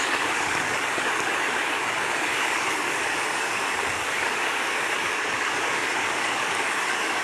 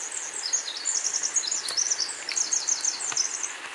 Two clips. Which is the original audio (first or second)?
second